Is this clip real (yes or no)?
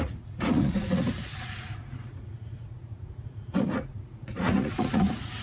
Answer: no